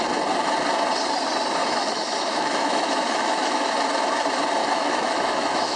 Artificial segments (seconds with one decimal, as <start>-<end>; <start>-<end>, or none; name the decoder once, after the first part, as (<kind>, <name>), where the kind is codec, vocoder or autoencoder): 1.6-3.7 (autoencoder, DAC-VAE); 4.6-5.8